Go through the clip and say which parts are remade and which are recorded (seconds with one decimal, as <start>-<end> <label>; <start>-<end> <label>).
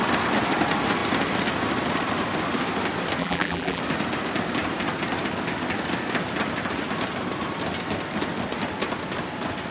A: 0.0-3.2 recorded; 3.2-3.8 remade; 3.8-9.7 recorded